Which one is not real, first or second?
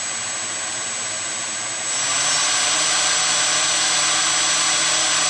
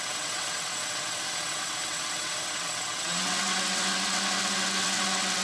second